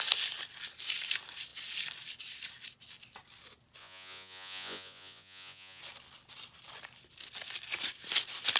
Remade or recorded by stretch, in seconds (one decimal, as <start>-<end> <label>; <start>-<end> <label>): 0.0-3.8 recorded; 3.8-5.8 remade; 5.8-8.6 recorded